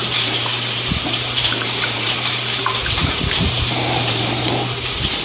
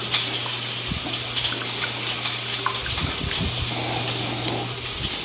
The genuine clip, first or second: second